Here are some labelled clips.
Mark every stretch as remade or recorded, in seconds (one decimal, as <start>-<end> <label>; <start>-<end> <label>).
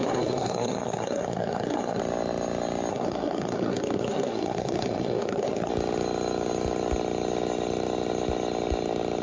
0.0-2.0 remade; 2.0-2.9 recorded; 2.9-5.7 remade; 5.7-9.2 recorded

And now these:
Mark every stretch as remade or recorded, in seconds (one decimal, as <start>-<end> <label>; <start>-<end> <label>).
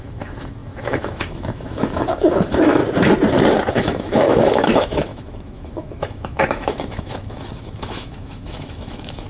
0.0-2.8 remade; 2.8-3.7 recorded; 3.7-9.3 remade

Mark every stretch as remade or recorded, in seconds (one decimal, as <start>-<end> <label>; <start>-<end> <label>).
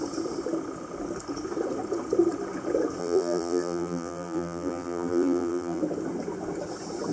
0.0-3.0 recorded; 3.0-5.8 remade; 5.8-7.1 recorded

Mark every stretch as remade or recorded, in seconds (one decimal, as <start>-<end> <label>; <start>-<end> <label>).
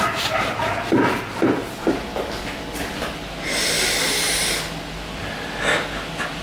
0.0-6.4 recorded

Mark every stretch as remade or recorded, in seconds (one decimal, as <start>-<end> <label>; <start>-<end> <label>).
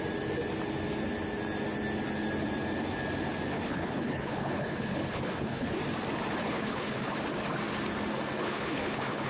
0.0-3.5 recorded; 3.5-5.8 remade; 5.8-6.4 recorded; 6.4-7.1 remade; 7.1-8.4 recorded; 8.4-9.3 remade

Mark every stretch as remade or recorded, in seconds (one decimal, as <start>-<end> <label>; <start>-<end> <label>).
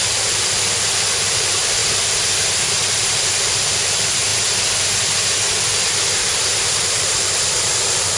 0.0-1.8 remade; 1.8-2.6 recorded; 2.6-4.3 remade; 4.3-6.0 recorded; 6.0-8.2 remade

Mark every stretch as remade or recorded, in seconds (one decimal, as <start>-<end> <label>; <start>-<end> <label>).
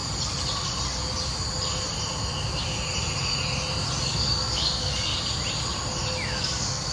0.0-4.1 recorded; 4.1-5.1 remade; 5.1-6.3 recorded; 6.3-6.9 remade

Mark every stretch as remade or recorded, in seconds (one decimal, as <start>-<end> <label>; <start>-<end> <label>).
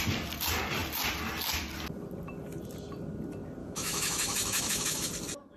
0.0-3.6 recorded; 3.6-5.1 remade; 5.1-5.6 recorded